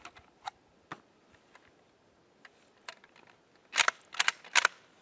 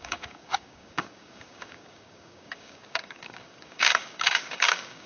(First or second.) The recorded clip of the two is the first